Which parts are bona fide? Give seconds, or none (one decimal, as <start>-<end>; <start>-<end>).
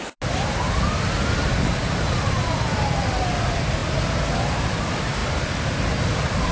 0.0-6.5